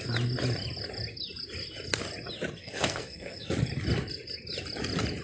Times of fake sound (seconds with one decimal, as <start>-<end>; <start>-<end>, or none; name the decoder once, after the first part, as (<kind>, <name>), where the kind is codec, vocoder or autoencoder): 2.6-3.5 (codec, SNAC)